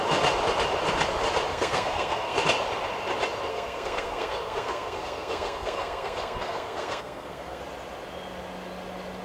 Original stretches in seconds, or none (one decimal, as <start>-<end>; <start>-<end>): 0.0-1.5; 2.4-3.5; 7.6-9.2